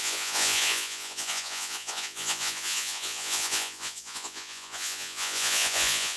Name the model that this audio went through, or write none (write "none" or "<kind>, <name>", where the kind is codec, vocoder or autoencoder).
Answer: vocoder, Vocos